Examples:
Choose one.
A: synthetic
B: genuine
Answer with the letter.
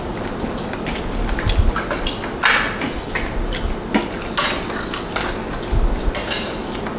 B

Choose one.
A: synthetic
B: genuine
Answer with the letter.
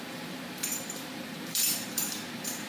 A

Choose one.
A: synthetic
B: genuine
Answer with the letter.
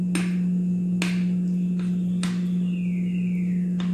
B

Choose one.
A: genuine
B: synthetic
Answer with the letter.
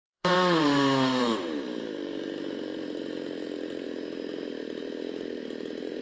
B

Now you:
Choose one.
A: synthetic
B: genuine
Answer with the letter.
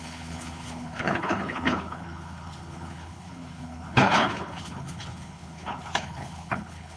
A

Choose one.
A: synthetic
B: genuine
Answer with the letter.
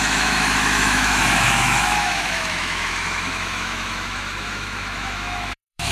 A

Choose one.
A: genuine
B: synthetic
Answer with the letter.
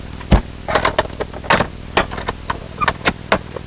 A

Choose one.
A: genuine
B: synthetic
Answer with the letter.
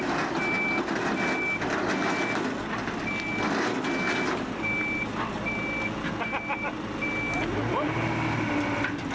A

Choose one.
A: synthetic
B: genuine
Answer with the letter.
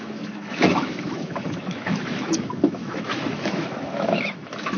A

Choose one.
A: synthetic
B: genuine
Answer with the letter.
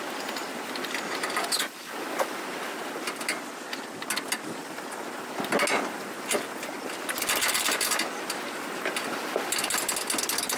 B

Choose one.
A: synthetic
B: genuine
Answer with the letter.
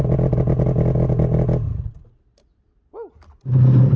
B